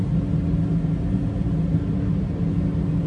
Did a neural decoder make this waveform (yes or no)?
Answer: no